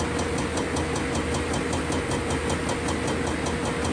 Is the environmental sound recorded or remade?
recorded